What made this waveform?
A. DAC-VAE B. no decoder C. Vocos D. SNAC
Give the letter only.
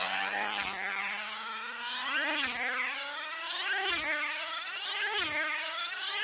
B